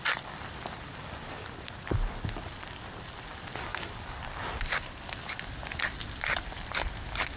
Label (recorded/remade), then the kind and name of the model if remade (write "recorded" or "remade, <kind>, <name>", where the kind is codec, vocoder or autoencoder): remade, vocoder, BigVGAN v2